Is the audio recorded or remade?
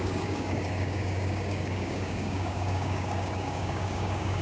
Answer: remade